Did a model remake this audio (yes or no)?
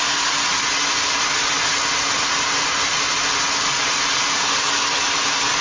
no